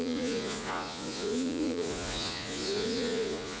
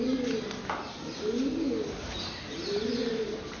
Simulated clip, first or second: first